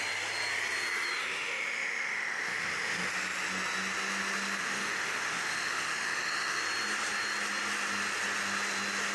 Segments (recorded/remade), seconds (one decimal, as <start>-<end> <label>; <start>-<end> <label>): 0.0-1.2 recorded; 1.2-3.1 remade; 3.1-4.6 recorded; 4.6-6.6 remade; 6.6-9.1 recorded